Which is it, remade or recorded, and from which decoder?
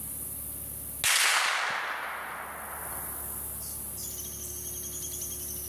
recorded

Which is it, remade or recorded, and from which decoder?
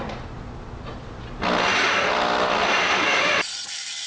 recorded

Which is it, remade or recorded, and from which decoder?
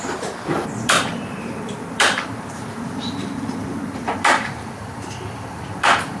remade, vocoder, BigVGAN v2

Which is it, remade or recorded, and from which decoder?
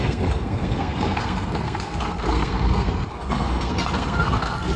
remade, codec, SNAC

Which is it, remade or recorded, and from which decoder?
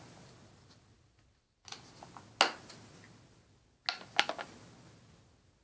recorded